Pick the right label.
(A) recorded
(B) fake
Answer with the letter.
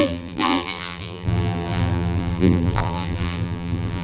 B